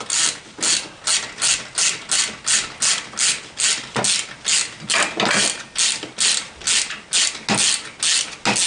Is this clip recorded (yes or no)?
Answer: yes